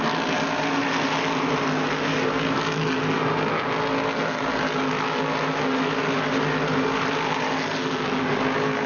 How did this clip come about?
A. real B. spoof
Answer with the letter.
A